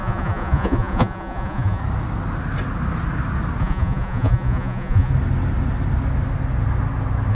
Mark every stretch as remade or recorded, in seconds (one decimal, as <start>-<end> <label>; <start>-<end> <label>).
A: 0.0-1.8 remade; 1.8-3.6 recorded; 3.6-5.1 remade; 5.1-7.3 recorded